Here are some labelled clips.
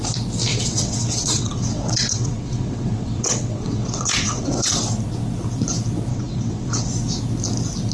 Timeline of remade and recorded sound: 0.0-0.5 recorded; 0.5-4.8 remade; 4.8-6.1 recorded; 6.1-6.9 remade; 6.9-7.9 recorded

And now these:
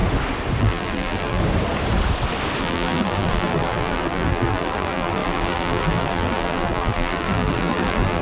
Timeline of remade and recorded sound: 0.0-0.6 recorded; 0.6-1.4 remade; 1.4-2.6 recorded; 2.6-8.2 remade

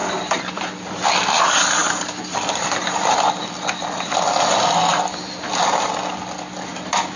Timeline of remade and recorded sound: 0.0-1.8 recorded; 1.8-6.1 remade; 6.1-7.2 recorded

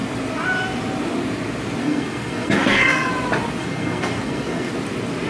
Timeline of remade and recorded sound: 0.0-1.8 recorded; 1.8-3.1 remade; 3.1-3.6 recorded; 3.6-4.7 remade; 4.7-5.3 recorded

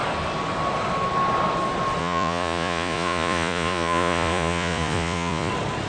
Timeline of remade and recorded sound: 0.0-2.0 recorded; 2.0-5.5 remade; 5.5-5.9 recorded

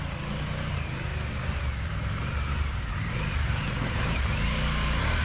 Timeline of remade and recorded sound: 0.0-1.1 remade; 1.1-2.9 recorded; 2.9-5.2 remade

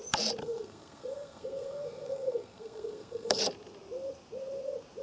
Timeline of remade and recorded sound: 0.0-0.4 recorded; 0.4-3.4 remade; 3.4-5.0 recorded